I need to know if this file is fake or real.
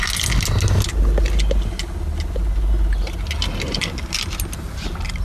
real